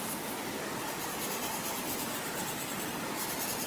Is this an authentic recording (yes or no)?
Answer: yes